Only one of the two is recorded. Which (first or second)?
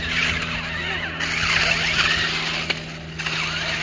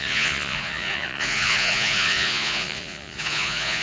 first